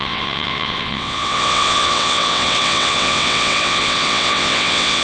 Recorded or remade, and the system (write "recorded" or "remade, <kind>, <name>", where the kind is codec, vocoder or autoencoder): remade, vocoder, WaveNeXt